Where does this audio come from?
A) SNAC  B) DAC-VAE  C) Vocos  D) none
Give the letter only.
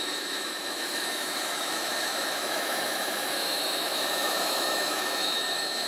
B